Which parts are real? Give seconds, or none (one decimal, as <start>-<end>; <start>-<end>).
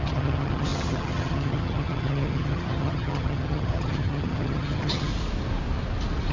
5.1-6.3